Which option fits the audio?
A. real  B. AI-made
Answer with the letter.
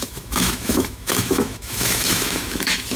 B